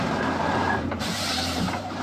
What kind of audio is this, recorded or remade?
remade